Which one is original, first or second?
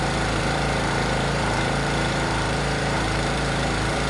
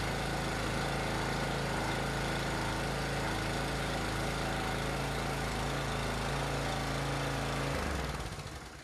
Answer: second